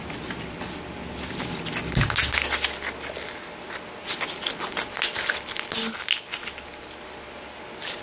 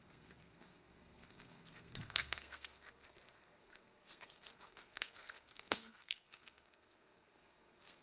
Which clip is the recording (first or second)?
first